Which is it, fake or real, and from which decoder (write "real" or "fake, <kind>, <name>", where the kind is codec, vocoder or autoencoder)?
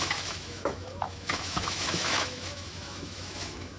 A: fake, autoencoder, DAC-VAE